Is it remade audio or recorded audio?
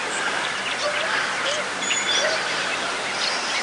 remade